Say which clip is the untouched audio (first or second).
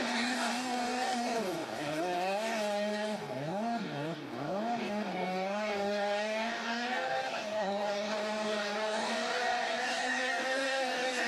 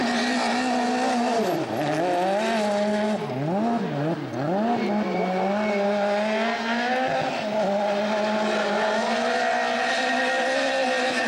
second